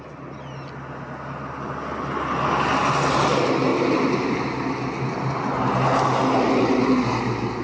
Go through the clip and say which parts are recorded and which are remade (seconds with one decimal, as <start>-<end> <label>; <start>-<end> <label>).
0.0-7.6 recorded